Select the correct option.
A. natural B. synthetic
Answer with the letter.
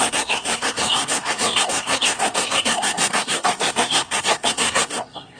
B